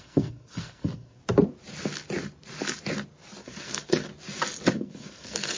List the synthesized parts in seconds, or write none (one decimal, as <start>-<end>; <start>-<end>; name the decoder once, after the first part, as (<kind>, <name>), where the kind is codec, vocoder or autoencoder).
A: 0.0-1.2 (codec, SNAC); 3.4-4.1; 4.7-5.6